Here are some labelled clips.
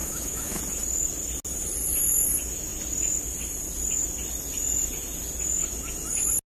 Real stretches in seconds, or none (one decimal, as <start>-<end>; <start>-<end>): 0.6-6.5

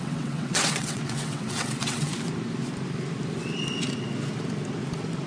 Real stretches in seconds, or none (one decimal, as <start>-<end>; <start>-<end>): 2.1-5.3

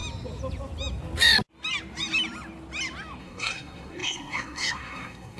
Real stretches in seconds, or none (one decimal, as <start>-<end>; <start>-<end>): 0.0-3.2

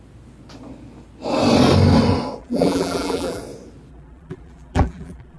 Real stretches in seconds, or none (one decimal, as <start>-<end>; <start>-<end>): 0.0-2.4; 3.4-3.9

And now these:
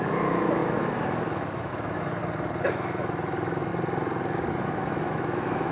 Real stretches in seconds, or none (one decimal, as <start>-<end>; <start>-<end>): 2.2-2.7; 3.7-4.5